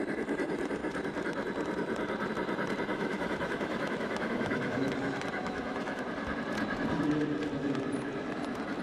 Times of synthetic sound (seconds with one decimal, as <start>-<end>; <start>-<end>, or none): 2.9-4.9; 5.4-6.0